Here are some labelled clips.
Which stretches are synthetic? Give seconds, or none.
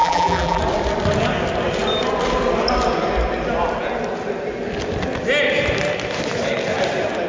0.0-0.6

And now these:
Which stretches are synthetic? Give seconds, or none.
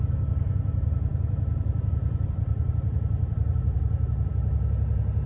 1.1-4.3